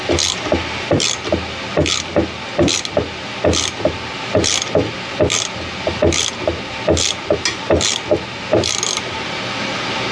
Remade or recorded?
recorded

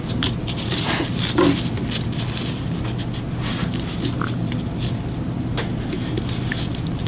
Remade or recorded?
recorded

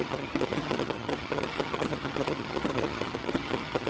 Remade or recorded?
remade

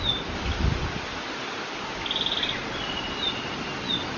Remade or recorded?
recorded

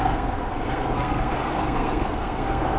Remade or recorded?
remade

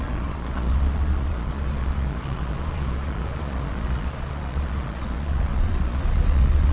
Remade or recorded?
remade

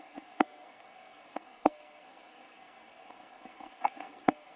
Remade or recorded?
remade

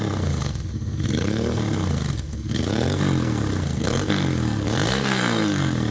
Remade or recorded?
remade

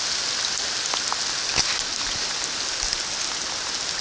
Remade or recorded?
recorded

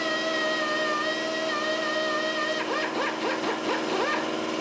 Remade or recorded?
recorded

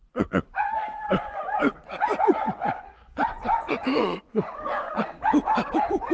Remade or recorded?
remade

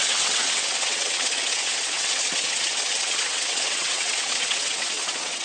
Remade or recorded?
remade